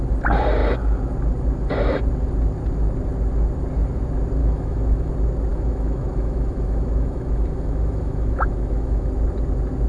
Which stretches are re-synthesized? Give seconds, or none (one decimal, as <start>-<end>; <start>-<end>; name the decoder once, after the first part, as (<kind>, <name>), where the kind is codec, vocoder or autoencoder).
4.4-5.1 (autoencoder, DAC-VAE); 5.5-9.1